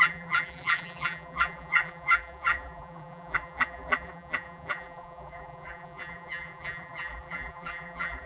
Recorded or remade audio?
remade